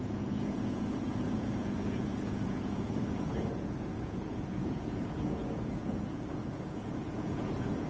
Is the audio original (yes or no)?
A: no